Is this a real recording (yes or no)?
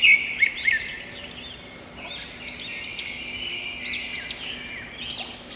yes